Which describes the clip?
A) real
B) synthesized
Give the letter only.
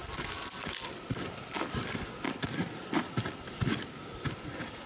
A